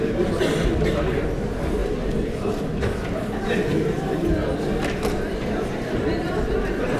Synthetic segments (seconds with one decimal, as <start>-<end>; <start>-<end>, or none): none